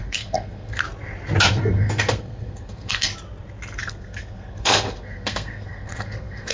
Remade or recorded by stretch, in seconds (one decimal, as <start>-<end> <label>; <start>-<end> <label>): 0.0-0.8 remade; 0.8-1.5 recorded; 1.5-3.1 remade; 3.1-3.8 recorded; 3.8-6.5 remade